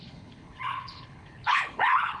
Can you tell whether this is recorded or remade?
remade